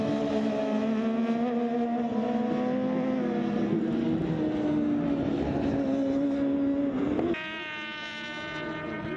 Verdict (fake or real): real